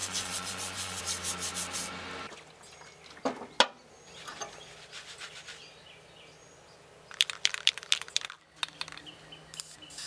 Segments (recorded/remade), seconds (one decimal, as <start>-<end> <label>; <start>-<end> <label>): 0.0-1.0 remade; 1.0-10.1 recorded